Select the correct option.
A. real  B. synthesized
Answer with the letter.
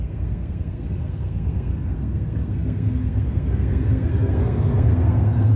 B